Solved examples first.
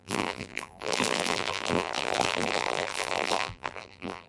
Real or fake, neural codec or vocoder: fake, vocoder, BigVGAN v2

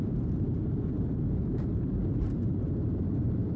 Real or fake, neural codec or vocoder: fake, vocoder, BigVGAN v2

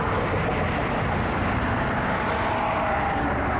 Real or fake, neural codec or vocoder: real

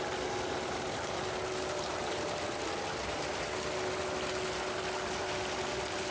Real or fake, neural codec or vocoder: real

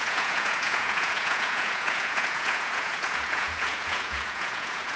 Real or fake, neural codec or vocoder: fake, vocoder, Vocos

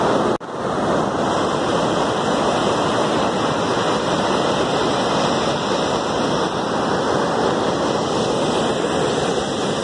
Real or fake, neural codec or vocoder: real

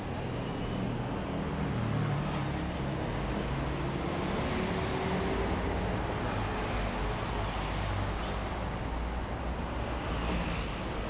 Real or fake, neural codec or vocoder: real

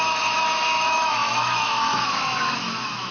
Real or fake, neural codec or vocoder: fake, autoencoder, DAC-VAE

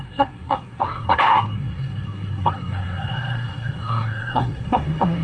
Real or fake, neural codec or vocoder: fake, codec, SNAC